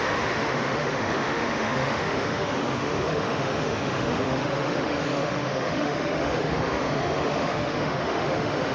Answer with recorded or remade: remade